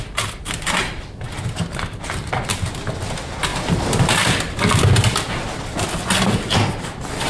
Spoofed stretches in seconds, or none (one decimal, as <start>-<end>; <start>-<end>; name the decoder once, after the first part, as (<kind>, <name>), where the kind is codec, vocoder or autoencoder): none